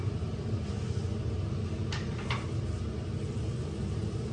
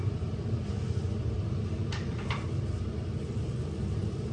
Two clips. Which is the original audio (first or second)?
first